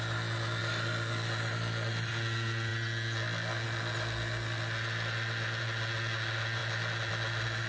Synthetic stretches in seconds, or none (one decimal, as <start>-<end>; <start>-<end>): none